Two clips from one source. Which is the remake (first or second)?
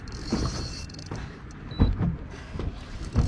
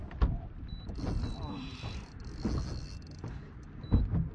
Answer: first